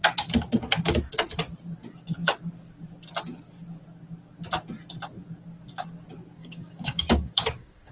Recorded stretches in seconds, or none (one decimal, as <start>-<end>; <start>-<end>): 0.0-6.4